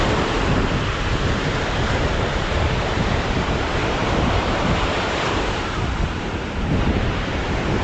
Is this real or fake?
fake